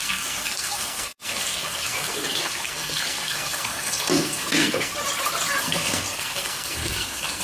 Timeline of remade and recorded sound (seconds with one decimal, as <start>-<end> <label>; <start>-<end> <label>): 0.0-4.9 remade; 4.9-5.6 recorded; 5.6-7.4 remade